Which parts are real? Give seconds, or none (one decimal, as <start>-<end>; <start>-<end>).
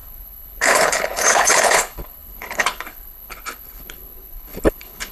none